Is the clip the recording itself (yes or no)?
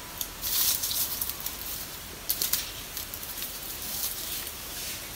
no